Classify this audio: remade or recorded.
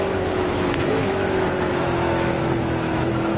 remade